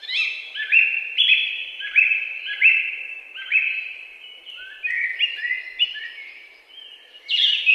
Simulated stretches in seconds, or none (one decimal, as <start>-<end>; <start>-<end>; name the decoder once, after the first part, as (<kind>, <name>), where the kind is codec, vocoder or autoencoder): 0.0-5.1 (vocoder, BigVGAN v2); 5.8-7.7